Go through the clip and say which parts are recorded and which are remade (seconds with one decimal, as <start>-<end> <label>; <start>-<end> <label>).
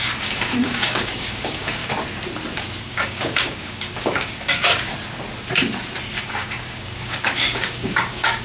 0.0-1.8 remade; 1.8-2.8 recorded; 2.8-4.9 remade; 4.9-6.1 recorded; 6.1-8.4 remade